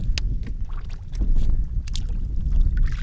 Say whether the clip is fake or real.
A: real